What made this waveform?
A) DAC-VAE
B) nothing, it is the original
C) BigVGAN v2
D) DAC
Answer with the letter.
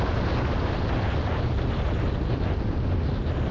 B